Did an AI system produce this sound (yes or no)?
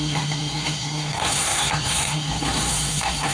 yes